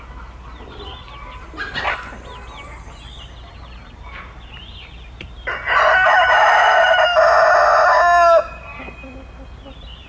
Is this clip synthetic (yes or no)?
no